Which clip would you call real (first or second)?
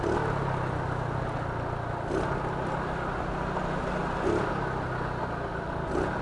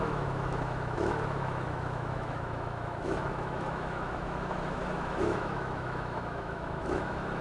first